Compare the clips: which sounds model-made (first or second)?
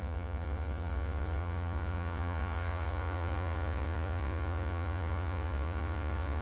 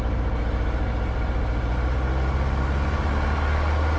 first